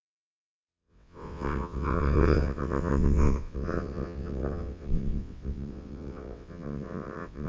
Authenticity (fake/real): fake